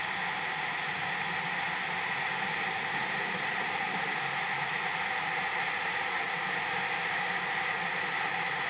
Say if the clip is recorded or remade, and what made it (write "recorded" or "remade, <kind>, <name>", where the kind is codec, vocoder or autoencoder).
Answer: recorded